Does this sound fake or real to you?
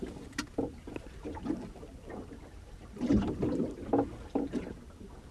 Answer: real